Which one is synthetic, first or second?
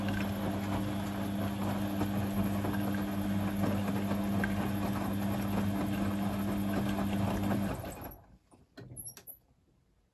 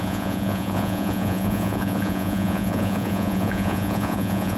second